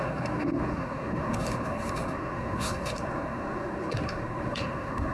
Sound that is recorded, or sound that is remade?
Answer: remade